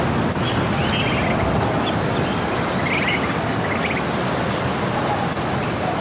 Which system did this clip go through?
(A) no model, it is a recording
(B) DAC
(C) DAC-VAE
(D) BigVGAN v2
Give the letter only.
A